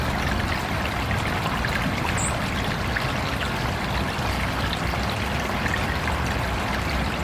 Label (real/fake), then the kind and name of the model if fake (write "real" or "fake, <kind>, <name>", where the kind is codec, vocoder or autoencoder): real